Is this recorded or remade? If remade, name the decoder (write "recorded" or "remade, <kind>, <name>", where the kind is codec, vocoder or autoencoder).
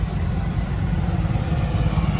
recorded